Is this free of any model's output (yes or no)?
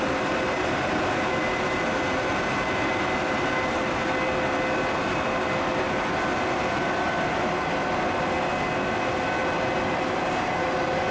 yes